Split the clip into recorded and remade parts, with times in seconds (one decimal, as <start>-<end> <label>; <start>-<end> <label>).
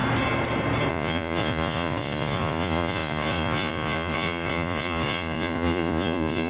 0.0-0.9 recorded; 0.9-6.5 remade